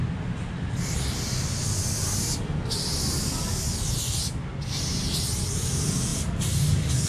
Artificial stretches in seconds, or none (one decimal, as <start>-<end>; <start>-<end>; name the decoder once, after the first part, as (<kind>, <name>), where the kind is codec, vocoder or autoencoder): none